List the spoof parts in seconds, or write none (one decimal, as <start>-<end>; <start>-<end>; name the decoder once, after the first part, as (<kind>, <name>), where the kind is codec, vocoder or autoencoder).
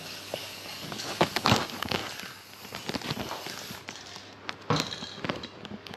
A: 0.0-2.0 (codec, DAC); 5.6-6.0